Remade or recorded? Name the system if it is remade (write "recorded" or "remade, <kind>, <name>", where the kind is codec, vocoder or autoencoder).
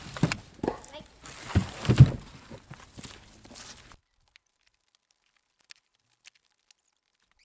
recorded